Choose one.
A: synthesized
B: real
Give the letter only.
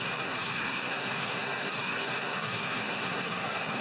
A